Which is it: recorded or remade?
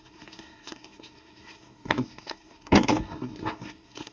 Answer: remade